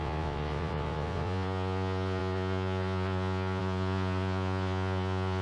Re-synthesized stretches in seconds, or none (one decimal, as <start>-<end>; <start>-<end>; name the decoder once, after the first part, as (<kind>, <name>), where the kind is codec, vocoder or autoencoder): 0.0-5.4 (vocoder, Vocos)